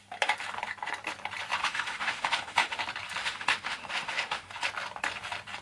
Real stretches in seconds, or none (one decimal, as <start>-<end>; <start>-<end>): 0.0-1.6; 2.8-3.2; 4.5-5.6